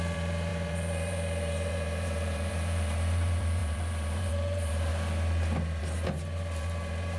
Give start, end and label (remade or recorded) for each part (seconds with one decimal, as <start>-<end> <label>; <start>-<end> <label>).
0.0-4.9 remade; 4.9-5.8 recorded; 5.8-7.2 remade